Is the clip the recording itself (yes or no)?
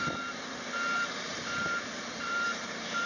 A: no